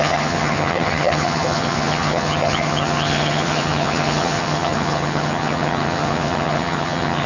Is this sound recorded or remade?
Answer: remade